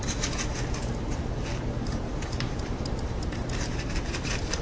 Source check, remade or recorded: remade